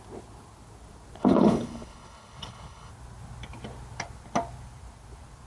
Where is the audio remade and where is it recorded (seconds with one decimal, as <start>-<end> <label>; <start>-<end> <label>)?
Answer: 0.0-1.2 recorded; 1.2-2.9 remade; 2.9-5.5 recorded